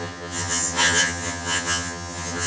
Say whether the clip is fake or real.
fake